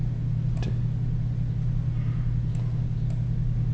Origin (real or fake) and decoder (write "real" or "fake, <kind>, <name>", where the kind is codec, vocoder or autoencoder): real